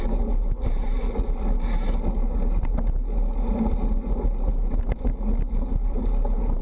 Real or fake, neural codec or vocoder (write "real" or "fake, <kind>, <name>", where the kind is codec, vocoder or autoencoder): real